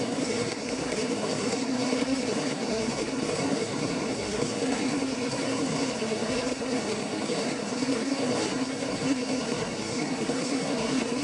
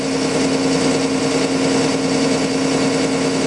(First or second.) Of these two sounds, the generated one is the first